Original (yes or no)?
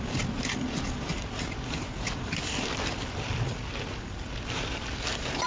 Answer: yes